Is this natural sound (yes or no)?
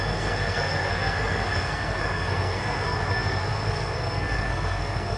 no